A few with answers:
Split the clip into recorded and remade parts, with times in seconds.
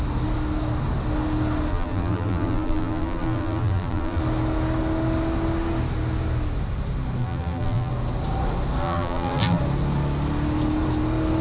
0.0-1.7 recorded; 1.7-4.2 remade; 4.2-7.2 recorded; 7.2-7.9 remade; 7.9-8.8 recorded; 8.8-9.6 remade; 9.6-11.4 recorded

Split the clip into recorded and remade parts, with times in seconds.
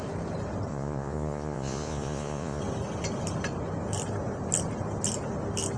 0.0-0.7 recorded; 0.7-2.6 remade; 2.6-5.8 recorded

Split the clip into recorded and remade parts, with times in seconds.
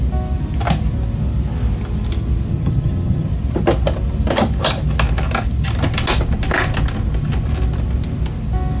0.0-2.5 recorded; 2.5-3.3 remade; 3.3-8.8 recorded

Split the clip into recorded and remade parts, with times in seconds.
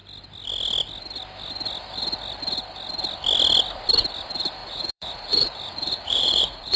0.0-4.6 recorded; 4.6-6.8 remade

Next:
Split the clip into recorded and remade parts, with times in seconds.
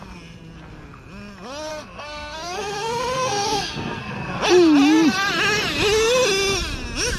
0.0-1.7 recorded; 1.7-4.4 remade; 4.4-7.2 recorded